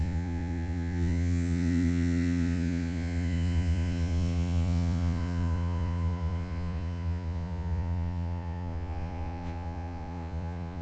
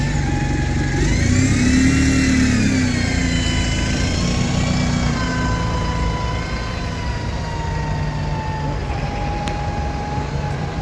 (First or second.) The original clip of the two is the second